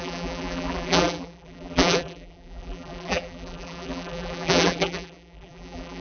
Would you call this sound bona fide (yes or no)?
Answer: no